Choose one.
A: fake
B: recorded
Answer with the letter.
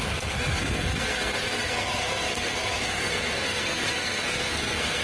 A